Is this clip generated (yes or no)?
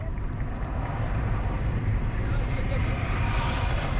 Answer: yes